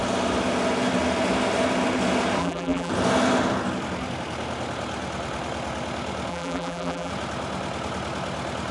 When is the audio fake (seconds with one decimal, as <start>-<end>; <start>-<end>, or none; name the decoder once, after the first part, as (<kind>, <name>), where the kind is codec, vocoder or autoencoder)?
2.4-2.9 (vocoder, BigVGAN v2); 6.3-7.1